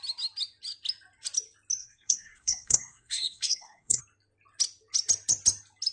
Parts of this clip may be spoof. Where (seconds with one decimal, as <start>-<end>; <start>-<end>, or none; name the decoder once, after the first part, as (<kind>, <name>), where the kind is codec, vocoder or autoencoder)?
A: 1.8-4.0 (codec, SNAC)